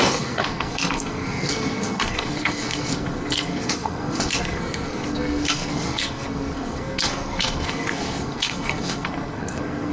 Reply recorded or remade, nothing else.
remade